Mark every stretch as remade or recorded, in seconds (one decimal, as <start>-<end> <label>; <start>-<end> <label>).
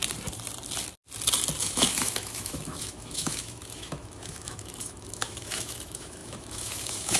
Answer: 0.0-1.6 recorded; 1.6-7.2 remade